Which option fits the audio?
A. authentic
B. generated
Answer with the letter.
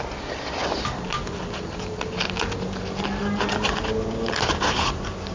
A